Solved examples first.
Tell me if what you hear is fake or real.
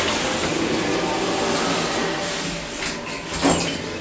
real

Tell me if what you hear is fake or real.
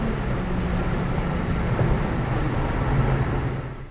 real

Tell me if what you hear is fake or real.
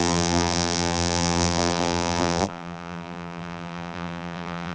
fake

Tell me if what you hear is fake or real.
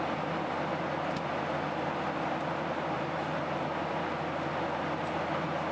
real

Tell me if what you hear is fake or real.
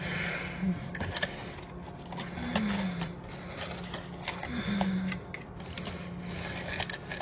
real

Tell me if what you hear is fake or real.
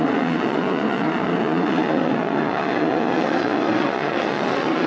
fake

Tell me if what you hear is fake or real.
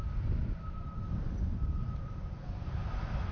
real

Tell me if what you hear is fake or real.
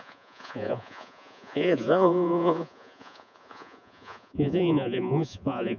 fake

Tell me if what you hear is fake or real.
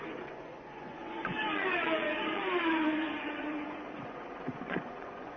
fake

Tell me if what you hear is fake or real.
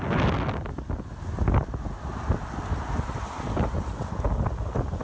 real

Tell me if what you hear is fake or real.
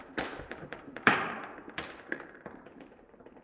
fake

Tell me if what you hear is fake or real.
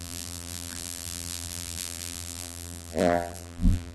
fake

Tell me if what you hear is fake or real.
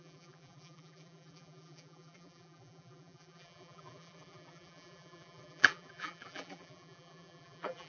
fake